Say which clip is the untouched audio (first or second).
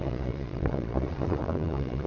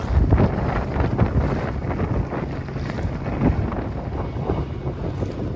second